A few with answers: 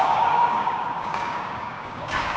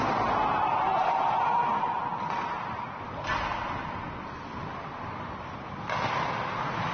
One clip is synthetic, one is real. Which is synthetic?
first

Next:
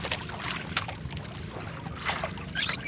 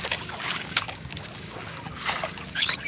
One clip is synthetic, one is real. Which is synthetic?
second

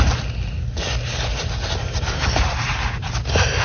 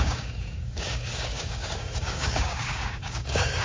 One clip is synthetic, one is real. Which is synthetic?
second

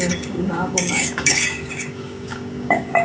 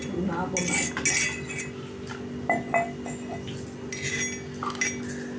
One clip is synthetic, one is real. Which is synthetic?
first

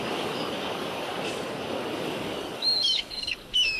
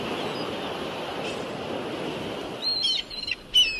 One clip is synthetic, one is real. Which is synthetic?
first